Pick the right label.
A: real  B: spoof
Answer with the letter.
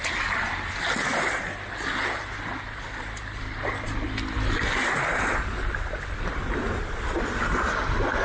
A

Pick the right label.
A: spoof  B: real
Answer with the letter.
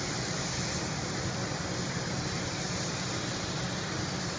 B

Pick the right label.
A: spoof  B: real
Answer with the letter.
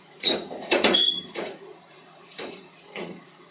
A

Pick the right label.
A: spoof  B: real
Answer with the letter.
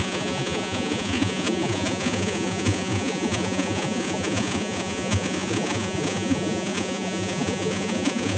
A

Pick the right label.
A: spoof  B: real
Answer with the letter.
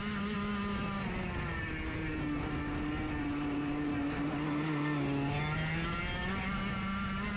B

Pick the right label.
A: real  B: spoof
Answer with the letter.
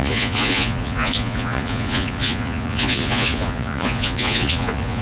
B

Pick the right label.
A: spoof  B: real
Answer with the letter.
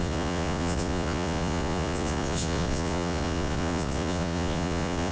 A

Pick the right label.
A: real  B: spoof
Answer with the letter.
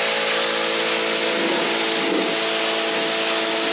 A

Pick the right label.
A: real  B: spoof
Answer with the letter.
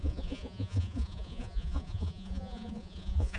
B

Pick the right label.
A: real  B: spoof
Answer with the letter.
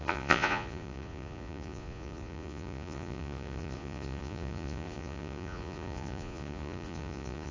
B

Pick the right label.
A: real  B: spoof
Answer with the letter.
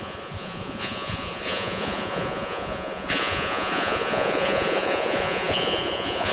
B